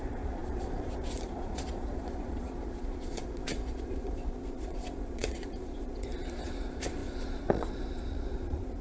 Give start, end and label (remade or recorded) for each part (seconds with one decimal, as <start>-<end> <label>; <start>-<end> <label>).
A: 0.0-8.8 remade